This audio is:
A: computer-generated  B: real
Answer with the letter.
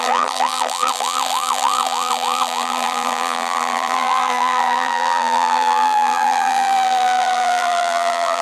A